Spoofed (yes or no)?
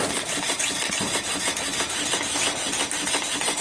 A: no